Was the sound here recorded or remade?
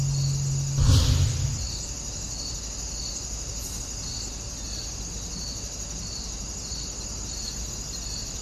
recorded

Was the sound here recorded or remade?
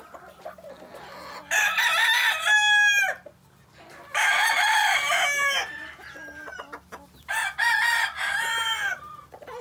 recorded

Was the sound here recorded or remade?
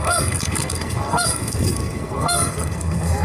remade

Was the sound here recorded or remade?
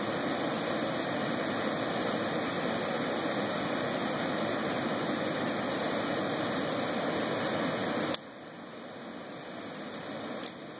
recorded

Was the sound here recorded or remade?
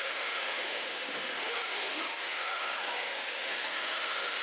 remade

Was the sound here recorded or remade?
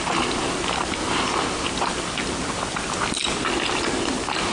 recorded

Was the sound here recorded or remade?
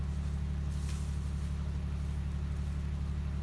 recorded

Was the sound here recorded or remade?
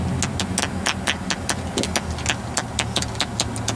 recorded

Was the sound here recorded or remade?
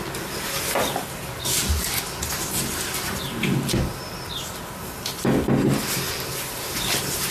recorded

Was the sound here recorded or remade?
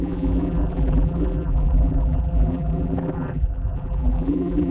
remade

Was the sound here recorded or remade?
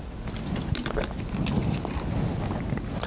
recorded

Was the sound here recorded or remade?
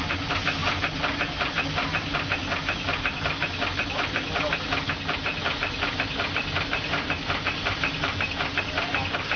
recorded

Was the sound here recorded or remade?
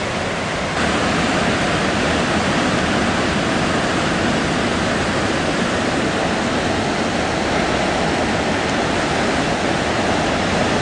recorded